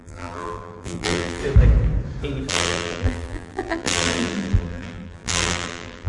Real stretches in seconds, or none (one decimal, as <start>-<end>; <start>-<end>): 1.4-2.5